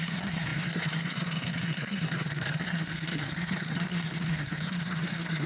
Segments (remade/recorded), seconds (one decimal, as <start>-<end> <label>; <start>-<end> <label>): 0.0-5.5 remade

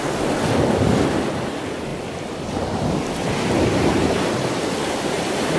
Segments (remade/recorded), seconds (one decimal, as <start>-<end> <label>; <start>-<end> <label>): 0.0-5.6 recorded

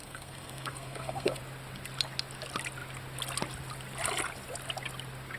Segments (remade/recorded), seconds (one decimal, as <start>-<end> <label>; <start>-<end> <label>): 0.0-1.4 remade; 1.4-5.4 recorded

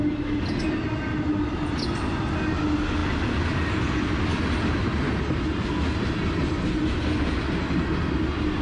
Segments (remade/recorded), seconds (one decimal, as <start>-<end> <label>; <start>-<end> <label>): 0.0-8.6 recorded

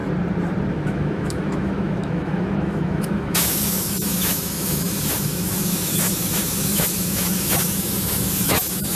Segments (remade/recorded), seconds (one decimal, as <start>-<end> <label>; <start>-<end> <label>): 0.0-0.7 recorded; 0.7-8.9 remade

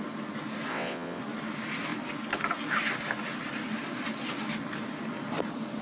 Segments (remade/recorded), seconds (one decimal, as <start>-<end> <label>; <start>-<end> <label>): 0.0-0.7 recorded; 0.7-1.2 remade; 1.2-5.8 recorded

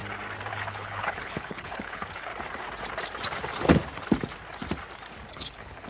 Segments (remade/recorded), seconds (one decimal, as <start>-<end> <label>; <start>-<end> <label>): 0.0-0.5 recorded; 0.5-2.3 remade; 2.3-5.3 recorded; 5.3-5.9 remade

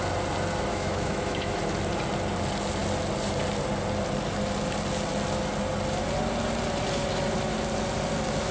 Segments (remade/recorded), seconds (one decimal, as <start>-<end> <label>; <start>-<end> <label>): 0.0-0.7 recorded; 0.7-1.6 remade; 1.6-8.5 recorded